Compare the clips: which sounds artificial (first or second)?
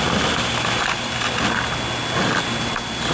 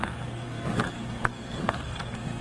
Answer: second